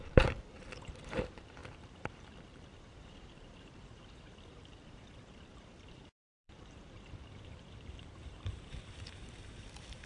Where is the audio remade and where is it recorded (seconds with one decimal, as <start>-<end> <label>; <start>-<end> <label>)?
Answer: 0.0-1.6 remade; 1.6-2.5 recorded; 2.5-10.1 remade